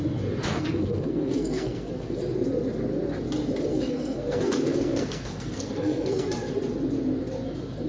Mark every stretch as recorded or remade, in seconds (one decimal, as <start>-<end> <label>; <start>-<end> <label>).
0.0-0.5 recorded; 0.5-2.2 remade; 2.2-3.7 recorded; 3.7-6.3 remade; 6.3-7.9 recorded